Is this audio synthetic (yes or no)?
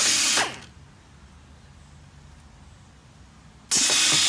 no